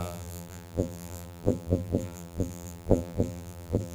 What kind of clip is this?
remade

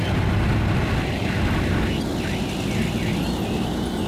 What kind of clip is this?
recorded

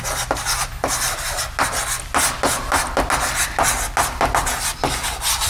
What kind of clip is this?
recorded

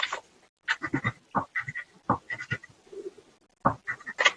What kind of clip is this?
recorded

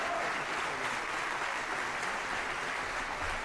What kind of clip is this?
recorded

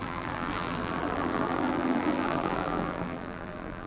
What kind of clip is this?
remade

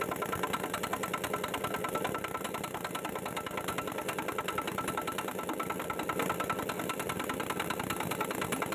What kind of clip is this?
recorded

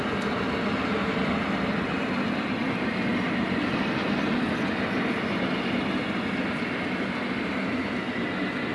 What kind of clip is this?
recorded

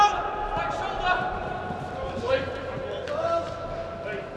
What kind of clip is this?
recorded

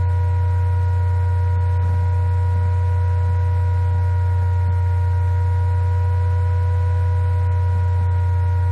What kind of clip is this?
recorded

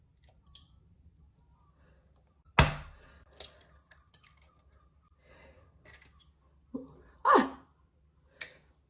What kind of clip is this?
recorded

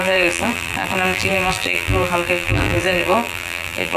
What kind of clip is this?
remade